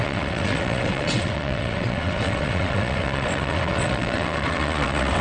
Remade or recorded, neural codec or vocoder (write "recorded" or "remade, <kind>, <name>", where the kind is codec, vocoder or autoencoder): remade, vocoder, WaveNeXt